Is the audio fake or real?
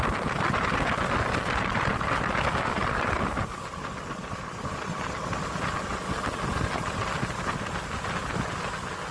real